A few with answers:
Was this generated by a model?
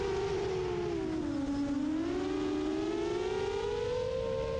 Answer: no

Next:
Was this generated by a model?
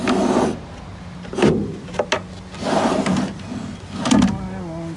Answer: no